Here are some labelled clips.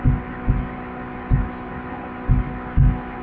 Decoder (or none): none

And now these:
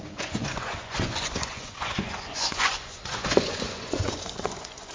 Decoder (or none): vocoder, Vocos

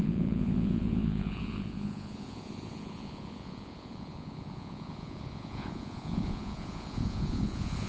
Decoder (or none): vocoder, Vocos